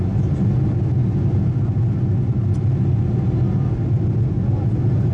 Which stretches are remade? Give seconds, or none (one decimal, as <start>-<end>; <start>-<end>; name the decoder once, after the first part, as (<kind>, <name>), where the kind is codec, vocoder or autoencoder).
none

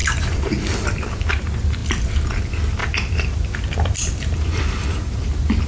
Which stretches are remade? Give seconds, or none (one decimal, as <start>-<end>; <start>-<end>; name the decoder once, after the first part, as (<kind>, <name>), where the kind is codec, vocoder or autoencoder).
0.0-1.1 (vocoder, BigVGAN v2); 2.8-5.1

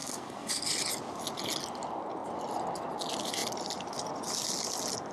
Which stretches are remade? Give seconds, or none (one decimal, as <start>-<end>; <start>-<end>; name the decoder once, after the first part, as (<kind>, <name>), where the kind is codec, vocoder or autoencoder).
0.0-0.7 (codec, SNAC)

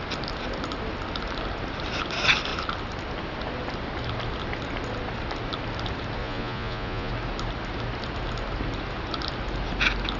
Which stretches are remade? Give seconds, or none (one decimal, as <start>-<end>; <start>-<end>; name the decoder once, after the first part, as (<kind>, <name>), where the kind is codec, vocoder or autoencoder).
6.2-7.1 (vocoder, Vocos)

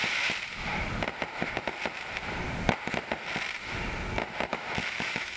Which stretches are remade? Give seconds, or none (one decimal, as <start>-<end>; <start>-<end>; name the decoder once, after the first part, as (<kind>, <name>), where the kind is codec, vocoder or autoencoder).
4.5-5.4 (autoencoder, DAC-VAE)

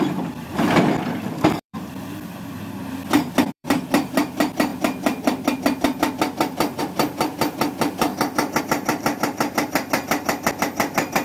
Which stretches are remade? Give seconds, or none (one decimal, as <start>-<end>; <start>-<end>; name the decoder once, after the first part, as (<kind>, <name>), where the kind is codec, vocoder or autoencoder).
0.0-4.7 (vocoder, BigVGAN v2); 6.8-8.1; 8.6-11.2

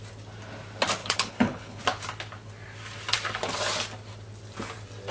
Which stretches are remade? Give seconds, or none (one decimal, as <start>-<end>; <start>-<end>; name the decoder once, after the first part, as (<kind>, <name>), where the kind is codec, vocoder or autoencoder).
1.0-1.8 (codec, HILCodec)